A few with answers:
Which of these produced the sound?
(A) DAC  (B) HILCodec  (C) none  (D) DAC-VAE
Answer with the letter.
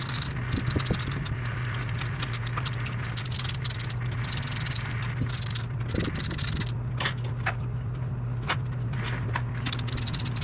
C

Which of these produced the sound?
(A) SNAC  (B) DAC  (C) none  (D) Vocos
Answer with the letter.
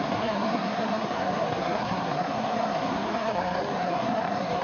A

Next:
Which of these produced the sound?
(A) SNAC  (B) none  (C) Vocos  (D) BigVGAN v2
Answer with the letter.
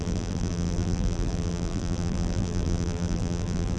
D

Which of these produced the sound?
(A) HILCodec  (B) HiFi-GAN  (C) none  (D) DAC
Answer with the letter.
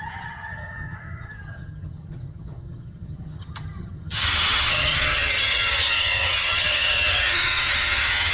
B